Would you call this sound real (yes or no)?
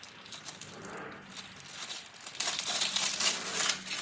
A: yes